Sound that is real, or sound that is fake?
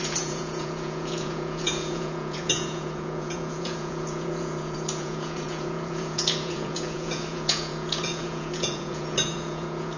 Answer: fake